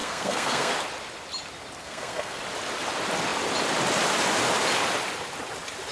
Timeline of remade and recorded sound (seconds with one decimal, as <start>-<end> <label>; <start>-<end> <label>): 0.0-0.7 remade; 0.7-1.8 recorded; 1.8-2.4 remade; 2.4-5.9 recorded